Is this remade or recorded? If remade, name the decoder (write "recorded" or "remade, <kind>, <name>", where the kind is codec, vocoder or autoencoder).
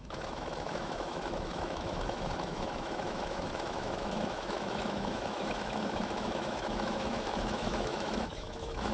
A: remade, autoencoder, DAC-VAE